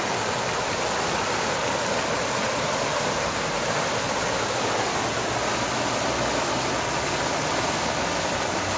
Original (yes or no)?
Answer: yes